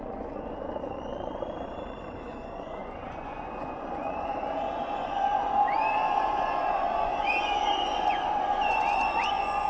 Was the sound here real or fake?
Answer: fake